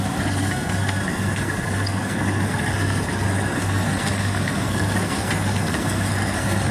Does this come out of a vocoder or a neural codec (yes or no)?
yes